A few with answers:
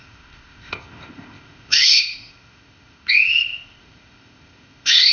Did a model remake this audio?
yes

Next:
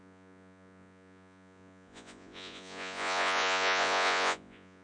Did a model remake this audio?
yes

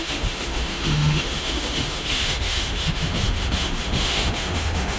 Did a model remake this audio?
yes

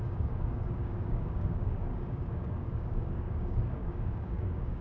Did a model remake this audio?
yes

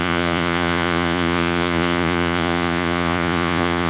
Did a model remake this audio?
yes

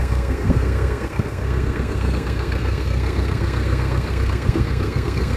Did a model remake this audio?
yes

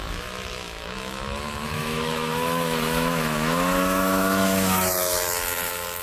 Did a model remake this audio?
yes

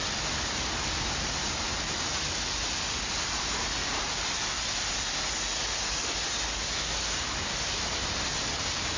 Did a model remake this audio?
no